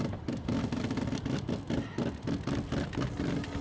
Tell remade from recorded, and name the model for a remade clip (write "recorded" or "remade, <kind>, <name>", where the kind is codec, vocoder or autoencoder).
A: recorded